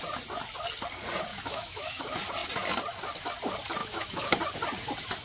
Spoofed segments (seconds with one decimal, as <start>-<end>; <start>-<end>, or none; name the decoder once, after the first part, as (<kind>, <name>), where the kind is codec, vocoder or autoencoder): 1.3-2.0 (autoencoder, DAC-VAE); 3.8-4.4

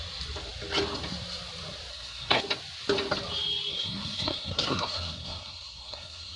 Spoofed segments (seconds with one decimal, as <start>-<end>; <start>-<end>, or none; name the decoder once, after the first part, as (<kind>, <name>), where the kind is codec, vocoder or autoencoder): 1.9-2.4 (codec, SNAC); 3.7-6.4

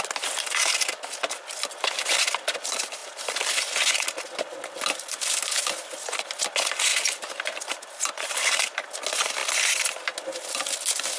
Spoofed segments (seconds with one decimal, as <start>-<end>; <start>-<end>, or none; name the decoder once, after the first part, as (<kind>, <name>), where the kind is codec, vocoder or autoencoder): 6.9-8.6 (vocoder, BigVGAN v2)